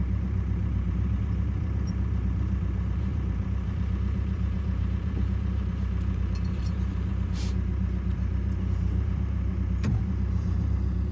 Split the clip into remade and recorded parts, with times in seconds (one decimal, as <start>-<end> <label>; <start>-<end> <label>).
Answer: 0.0-11.1 remade